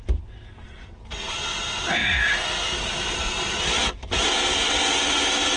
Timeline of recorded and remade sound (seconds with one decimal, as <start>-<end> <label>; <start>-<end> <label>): 0.0-5.6 recorded